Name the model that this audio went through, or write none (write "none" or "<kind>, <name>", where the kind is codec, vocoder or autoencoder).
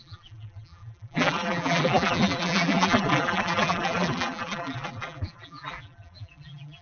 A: vocoder, BigVGAN v2